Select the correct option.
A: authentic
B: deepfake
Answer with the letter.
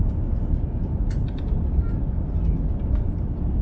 A